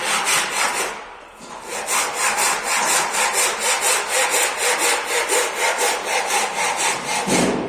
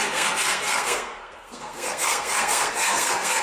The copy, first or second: second